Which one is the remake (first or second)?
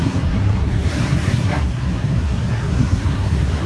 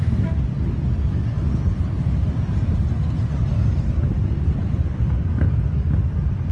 first